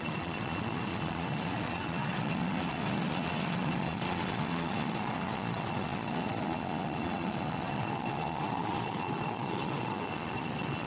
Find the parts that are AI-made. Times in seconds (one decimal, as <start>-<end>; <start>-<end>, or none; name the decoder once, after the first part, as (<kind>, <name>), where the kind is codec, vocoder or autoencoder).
0.0-10.9 (vocoder, Vocos)